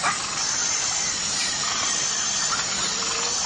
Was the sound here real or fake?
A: fake